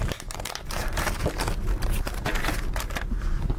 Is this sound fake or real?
fake